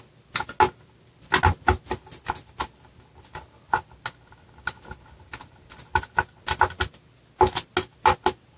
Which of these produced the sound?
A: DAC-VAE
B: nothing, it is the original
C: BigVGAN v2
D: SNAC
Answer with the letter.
B